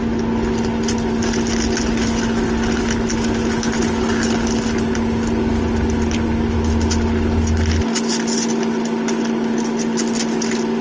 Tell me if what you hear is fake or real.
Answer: real